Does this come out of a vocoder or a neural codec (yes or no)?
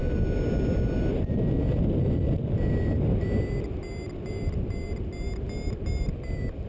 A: no